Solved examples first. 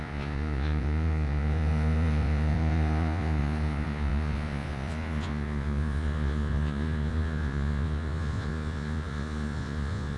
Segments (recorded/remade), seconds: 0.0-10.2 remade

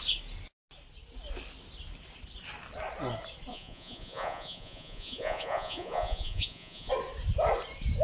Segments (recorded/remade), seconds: 0.0-3.5 recorded; 3.5-6.9 remade; 6.9-8.0 recorded

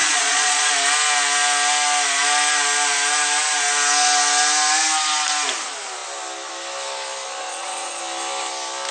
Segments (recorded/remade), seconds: 0.0-0.7 remade; 0.7-7.5 recorded; 7.5-8.0 remade; 8.0-8.9 recorded

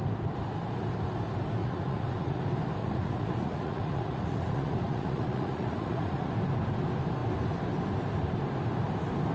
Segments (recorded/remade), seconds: 0.0-1.6 recorded; 1.6-2.4 remade; 2.4-2.8 recorded; 2.8-6.3 remade; 6.3-9.3 recorded

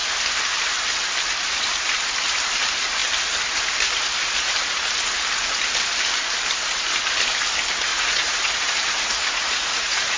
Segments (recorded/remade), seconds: 0.0-7.9 recorded; 7.9-10.2 remade

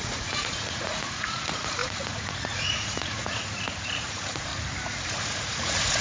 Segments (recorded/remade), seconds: 0.0-4.5 remade; 4.5-5.1 recorded; 5.1-6.0 remade